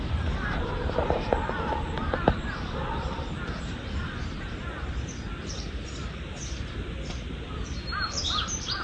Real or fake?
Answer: fake